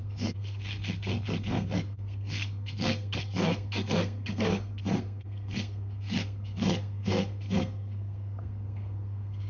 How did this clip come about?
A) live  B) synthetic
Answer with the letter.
B